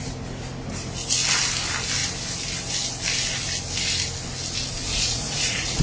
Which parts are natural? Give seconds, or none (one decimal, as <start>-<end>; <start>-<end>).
0.0-4.9